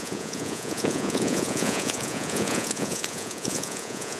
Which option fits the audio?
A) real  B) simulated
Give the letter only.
B